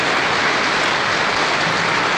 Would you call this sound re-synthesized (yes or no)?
no